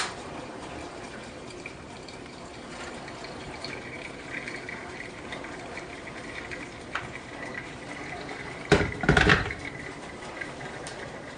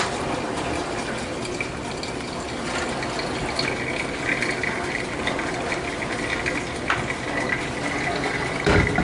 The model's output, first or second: first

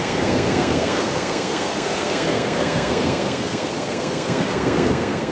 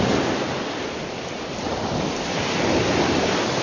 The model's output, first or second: first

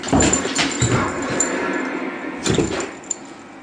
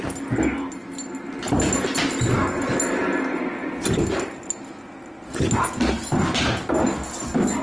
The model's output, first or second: first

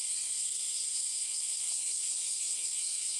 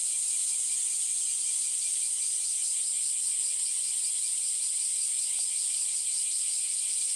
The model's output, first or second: first